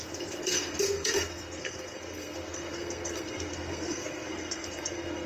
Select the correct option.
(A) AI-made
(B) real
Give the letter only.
A